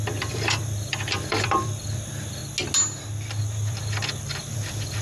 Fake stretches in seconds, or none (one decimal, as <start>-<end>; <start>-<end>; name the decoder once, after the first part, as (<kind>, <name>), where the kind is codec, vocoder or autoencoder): 0.0-2.4 (vocoder, BigVGAN v2); 3.4-5.0